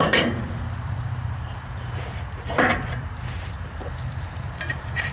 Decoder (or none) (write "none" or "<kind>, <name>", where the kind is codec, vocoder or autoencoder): vocoder, BigVGAN v2